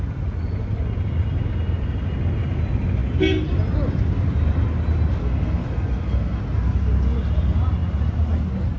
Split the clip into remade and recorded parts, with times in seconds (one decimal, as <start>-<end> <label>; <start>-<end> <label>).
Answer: 0.0-5.2 recorded; 5.2-6.4 remade; 6.4-8.8 recorded